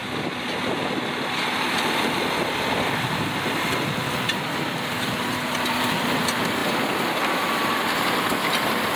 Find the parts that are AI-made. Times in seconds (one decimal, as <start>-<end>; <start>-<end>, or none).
0.8-9.0